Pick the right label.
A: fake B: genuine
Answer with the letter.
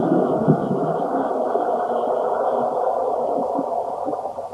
B